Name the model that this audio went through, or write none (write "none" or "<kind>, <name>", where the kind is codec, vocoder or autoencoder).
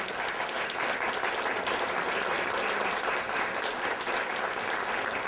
none